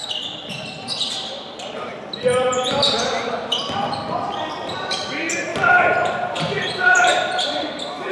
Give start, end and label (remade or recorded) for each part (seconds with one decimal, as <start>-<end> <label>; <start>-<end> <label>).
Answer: 0.0-5.5 remade; 5.5-6.4 recorded; 6.4-8.1 remade